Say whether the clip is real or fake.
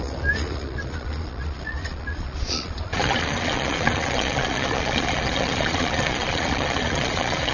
fake